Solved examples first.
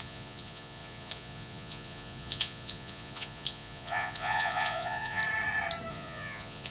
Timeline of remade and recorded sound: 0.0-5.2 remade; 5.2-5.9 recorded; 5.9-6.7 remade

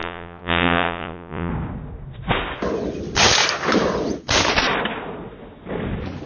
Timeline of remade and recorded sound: 0.0-1.5 remade; 1.5-6.3 recorded

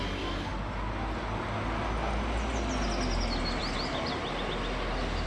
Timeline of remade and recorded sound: 0.0-5.3 recorded

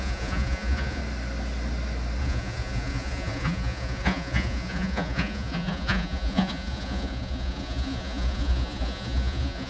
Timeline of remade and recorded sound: 0.0-1.0 remade; 1.0-2.2 recorded; 2.2-9.7 remade

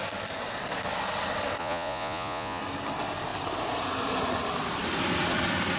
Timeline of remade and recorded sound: 0.0-1.6 recorded; 1.6-2.6 remade; 2.6-5.8 recorded

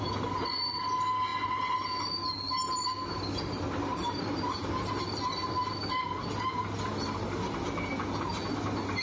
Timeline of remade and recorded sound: 0.0-9.0 recorded

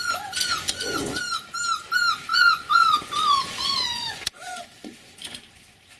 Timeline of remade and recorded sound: 0.0-1.2 remade; 1.2-2.3 recorded; 2.3-5.4 remade; 5.4-6.0 recorded

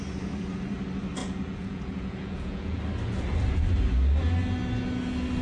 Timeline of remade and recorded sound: 0.0-1.2 recorded; 1.2-2.8 remade; 2.8-5.4 recorded